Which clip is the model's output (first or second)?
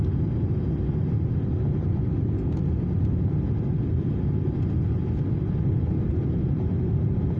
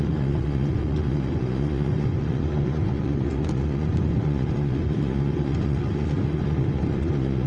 second